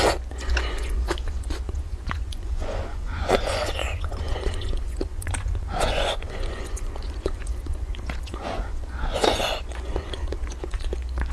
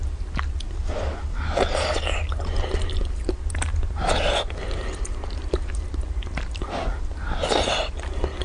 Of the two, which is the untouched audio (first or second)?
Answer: second